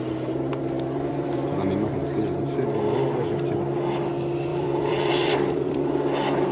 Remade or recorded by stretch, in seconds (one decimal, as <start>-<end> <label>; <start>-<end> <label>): 0.0-0.5 recorded; 0.5-1.9 remade; 1.9-4.5 recorded; 4.5-5.9 remade; 5.9-6.5 recorded